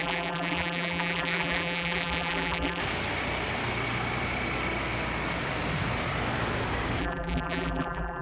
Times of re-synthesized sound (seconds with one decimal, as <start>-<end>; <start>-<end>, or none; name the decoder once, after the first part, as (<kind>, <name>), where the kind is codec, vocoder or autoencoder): 0.0-2.8 (vocoder, BigVGAN v2); 7.0-8.2